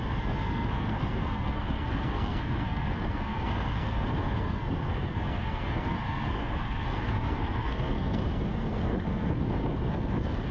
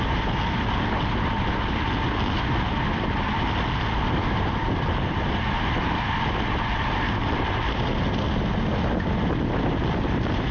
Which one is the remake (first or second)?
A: first